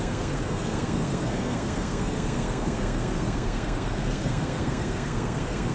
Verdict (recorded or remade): remade